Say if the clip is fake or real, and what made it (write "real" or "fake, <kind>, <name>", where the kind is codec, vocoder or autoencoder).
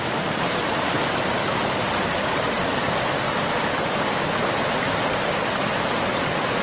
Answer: real